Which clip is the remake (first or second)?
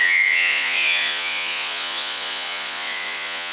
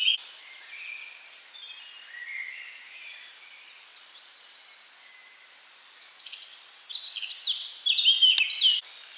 first